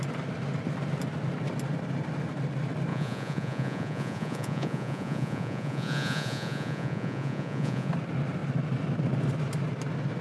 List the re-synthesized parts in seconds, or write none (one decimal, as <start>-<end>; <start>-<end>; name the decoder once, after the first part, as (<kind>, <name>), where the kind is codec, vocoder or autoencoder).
2.9-7.9 (vocoder, Vocos)